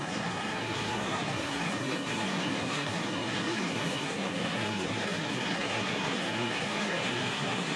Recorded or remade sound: remade